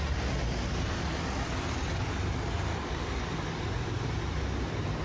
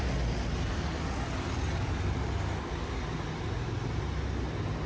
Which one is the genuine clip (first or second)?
second